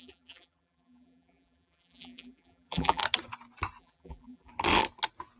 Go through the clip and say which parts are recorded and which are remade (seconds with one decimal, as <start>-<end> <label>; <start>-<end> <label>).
0.0-3.0 remade; 3.0-3.8 recorded; 3.8-4.5 remade; 4.5-5.4 recorded